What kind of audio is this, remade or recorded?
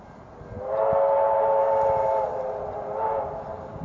recorded